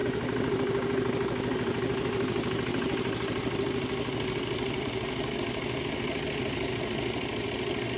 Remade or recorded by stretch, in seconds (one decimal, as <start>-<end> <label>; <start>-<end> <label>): 0.0-8.0 recorded